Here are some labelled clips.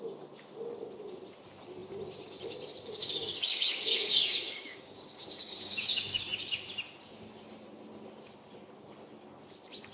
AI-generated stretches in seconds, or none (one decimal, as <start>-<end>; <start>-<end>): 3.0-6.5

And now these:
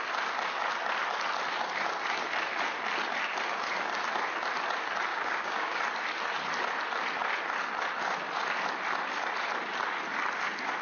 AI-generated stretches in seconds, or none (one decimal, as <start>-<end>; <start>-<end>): 5.1-5.8

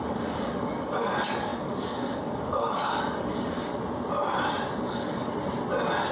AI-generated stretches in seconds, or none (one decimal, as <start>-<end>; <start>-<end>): 0.0-3.7; 4.8-5.3

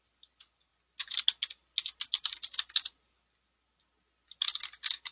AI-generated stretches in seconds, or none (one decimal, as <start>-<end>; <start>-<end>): none